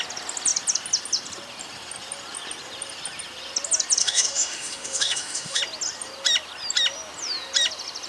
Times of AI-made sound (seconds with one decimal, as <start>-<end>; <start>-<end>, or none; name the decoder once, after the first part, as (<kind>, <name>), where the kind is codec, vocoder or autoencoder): 4.0-5.6 (autoencoder, DAC-VAE)